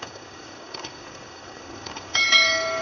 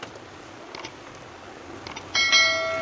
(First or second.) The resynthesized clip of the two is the first